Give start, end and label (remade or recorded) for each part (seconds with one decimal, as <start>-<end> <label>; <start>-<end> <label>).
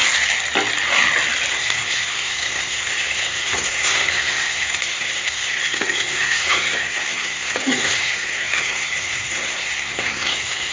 0.0-1.5 recorded; 1.5-10.7 remade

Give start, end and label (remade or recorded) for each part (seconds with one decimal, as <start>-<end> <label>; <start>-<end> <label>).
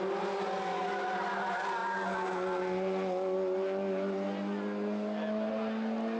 0.0-6.2 recorded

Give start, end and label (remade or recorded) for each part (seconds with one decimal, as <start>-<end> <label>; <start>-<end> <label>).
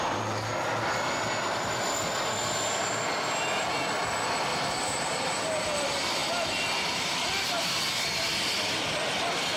0.0-4.5 recorded; 4.5-5.5 remade; 5.5-9.6 recorded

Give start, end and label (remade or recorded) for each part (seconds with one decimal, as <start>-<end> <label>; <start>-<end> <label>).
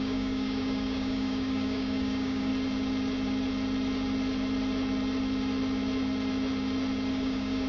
0.0-2.5 remade; 2.5-7.1 recorded; 7.1-7.7 remade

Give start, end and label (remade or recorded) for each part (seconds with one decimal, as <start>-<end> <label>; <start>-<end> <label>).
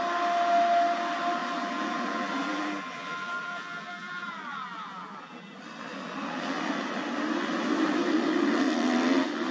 0.0-1.4 recorded; 1.4-5.5 remade; 5.5-9.5 recorded